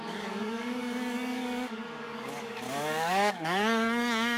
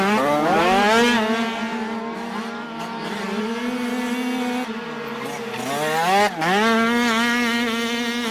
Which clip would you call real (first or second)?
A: second